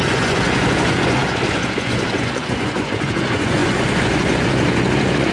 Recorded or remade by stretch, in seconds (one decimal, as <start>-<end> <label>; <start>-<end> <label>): 0.0-5.3 remade